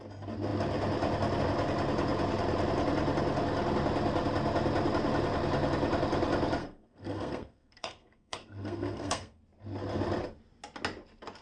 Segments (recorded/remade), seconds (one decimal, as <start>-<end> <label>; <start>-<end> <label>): 0.0-6.6 recorded; 6.6-9.4 remade; 9.4-11.4 recorded